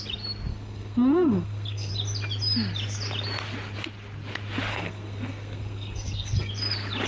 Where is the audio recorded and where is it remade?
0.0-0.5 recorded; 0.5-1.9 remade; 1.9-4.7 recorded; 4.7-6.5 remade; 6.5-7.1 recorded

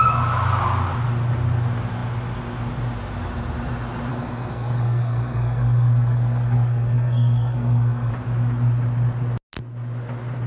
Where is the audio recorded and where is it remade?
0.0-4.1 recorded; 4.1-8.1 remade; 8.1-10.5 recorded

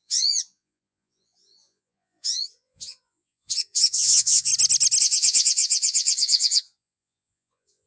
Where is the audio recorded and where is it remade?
0.0-4.5 remade; 4.5-5.0 recorded; 5.0-7.9 remade

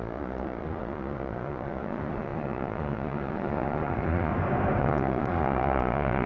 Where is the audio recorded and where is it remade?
0.0-4.3 remade; 4.3-4.8 recorded; 4.8-6.3 remade

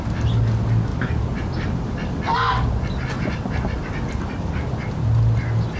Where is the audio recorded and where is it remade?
0.0-5.8 recorded

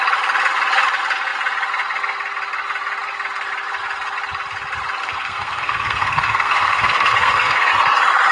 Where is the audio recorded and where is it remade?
0.0-5.0 recorded; 5.0-7.7 remade; 7.7-8.3 recorded